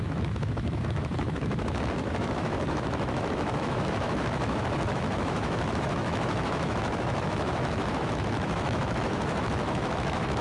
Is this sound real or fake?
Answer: fake